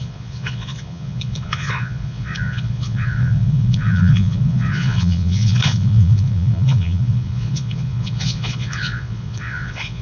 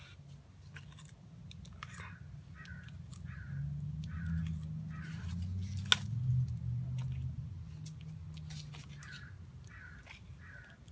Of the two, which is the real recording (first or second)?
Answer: second